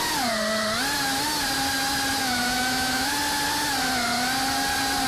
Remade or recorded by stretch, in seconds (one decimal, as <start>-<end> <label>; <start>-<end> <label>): 0.0-2.2 recorded; 2.2-3.1 remade; 3.1-5.1 recorded